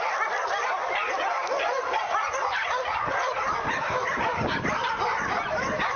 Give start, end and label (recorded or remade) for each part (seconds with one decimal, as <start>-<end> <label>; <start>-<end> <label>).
0.0-6.0 recorded